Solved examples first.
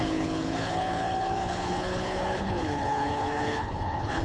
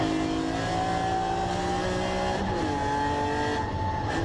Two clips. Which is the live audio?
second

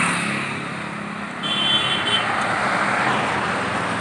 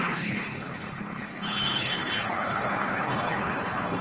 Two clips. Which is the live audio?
first